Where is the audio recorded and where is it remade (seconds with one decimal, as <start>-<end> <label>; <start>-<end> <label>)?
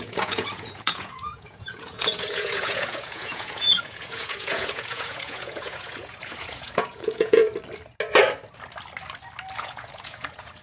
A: 0.0-7.5 remade; 7.5-9.6 recorded; 9.6-10.6 remade